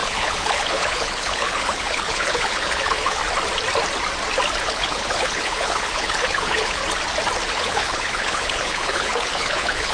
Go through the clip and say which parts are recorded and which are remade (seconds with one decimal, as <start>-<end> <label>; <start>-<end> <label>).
0.0-3.2 remade; 3.2-4.6 recorded; 4.6-6.8 remade; 6.8-7.5 recorded; 7.5-9.9 remade